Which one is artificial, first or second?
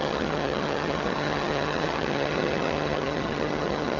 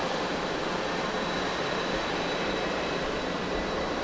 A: first